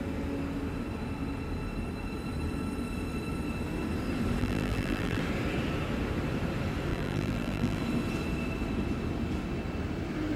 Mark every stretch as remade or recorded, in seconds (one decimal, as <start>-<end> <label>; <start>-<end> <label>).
0.0-4.4 recorded; 4.4-5.2 remade; 5.2-6.9 recorded; 6.9-7.8 remade; 7.8-10.4 recorded